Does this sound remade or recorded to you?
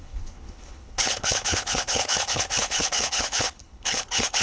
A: remade